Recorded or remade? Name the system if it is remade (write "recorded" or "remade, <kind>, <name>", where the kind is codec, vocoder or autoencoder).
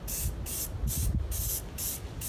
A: recorded